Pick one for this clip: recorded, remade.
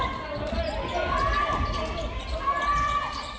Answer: recorded